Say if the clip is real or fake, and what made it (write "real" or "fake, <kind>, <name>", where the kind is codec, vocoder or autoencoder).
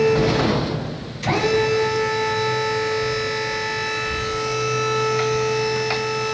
real